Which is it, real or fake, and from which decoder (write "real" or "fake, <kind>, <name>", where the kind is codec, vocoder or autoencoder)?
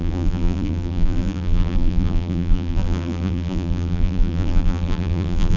fake, vocoder, BigVGAN v2